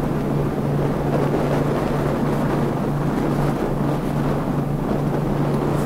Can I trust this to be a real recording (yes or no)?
yes